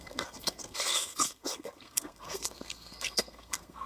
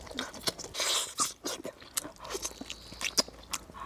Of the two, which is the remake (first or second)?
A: first